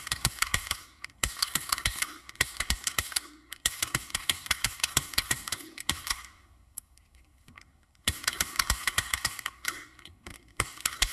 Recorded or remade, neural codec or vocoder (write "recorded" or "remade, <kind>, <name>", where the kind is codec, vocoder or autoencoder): remade, codec, SNAC